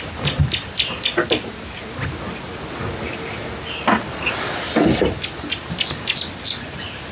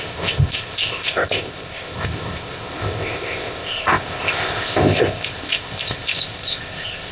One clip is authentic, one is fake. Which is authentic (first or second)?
first